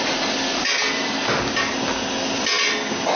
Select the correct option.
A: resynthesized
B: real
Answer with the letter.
B